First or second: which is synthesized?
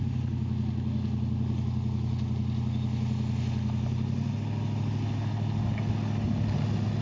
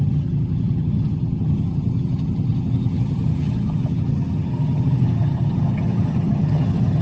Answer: second